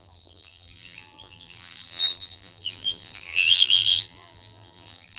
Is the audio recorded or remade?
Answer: remade